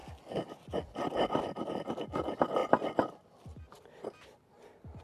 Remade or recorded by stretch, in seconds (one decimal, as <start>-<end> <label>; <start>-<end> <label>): 0.0-5.0 recorded